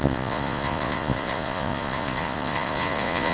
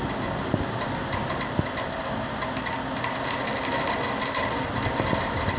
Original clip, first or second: second